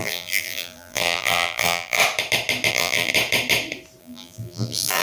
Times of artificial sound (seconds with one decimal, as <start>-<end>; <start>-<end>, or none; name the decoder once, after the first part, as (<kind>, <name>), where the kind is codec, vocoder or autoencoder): 0.0-2.0 (vocoder, BigVGAN v2); 2.7-3.1; 4.0-5.0